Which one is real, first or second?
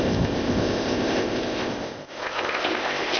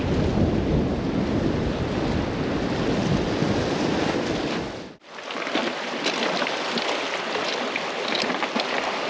second